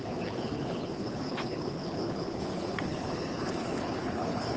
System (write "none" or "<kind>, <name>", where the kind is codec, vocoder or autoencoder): codec, HILCodec